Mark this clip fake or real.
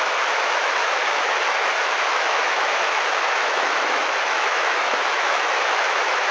fake